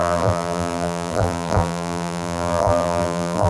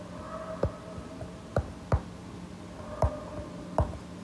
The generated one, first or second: first